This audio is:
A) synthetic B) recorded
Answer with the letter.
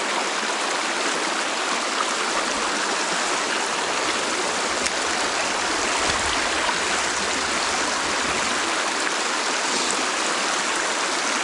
B